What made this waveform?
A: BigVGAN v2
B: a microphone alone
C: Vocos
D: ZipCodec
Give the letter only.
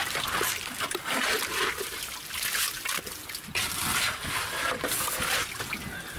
B